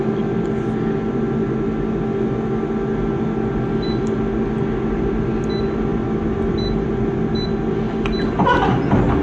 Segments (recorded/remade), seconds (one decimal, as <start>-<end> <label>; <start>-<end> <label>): 0.0-5.9 recorded; 5.9-6.9 remade; 6.9-9.2 recorded